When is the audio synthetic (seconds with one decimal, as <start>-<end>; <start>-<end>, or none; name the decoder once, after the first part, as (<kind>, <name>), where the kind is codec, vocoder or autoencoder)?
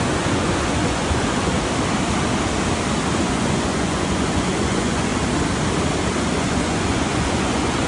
0.0-1.5 (vocoder, Vocos); 3.2-5.1; 6.2-7.9